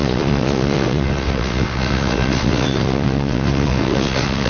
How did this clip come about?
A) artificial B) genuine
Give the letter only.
A